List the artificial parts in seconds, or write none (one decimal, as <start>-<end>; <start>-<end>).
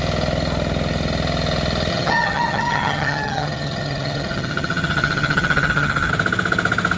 1.9-6.1